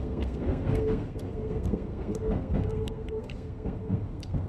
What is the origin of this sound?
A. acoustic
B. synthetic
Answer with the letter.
B